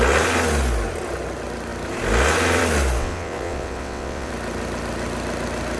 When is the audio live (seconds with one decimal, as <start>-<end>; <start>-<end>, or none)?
0.0-3.0; 4.3-5.8